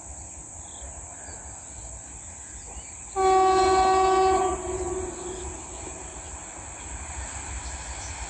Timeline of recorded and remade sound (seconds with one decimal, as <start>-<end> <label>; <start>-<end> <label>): 0.0-8.3 recorded